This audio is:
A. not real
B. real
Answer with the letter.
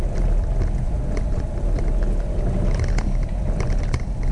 B